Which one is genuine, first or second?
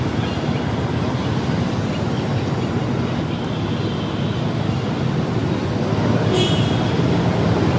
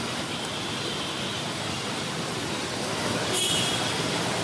first